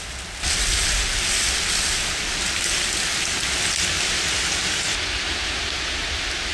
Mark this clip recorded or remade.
recorded